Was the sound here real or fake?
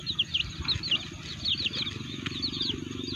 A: real